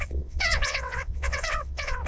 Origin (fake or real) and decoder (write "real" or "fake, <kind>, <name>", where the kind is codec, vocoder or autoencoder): fake, vocoder, WaveNeXt